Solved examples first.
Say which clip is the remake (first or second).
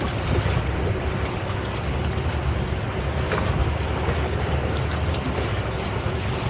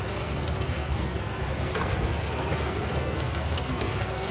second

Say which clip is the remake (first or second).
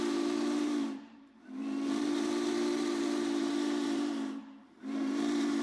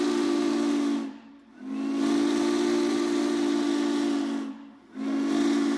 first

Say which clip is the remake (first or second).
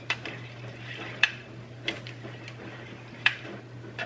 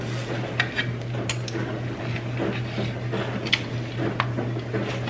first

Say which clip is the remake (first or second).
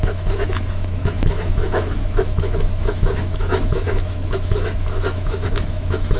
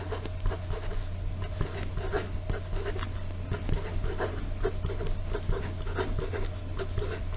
first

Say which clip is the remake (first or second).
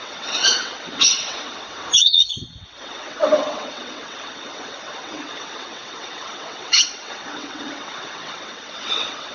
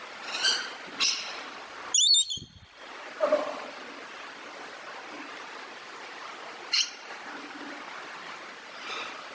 first